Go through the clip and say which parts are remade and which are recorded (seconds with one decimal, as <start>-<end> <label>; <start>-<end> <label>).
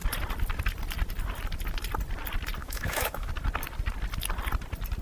0.0-2.6 recorded; 2.6-3.3 remade; 3.3-5.0 recorded